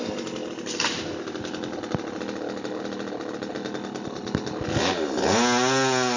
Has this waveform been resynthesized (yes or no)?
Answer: no